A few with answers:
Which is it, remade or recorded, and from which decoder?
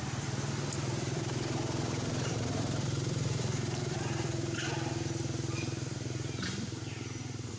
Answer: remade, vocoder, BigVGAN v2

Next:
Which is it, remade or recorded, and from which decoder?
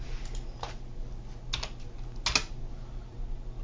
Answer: recorded